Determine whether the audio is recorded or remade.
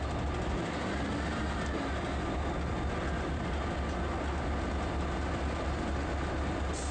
recorded